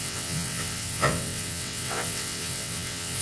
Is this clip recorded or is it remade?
remade